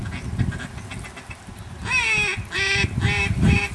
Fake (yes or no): no